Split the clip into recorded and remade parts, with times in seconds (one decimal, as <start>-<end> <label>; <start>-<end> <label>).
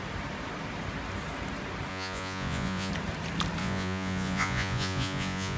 0.0-1.9 recorded; 1.9-2.9 remade; 2.9-3.6 recorded; 3.6-5.6 remade